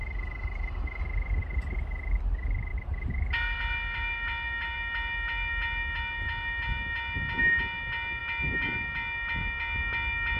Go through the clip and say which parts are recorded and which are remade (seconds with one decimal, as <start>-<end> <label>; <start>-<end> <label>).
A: 0.0-1.0 remade; 1.0-10.4 recorded